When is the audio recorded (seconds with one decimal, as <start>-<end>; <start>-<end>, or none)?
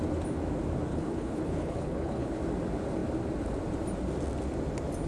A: 0.0-0.9; 2.3-5.1